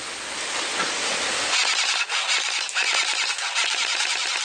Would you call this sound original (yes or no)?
yes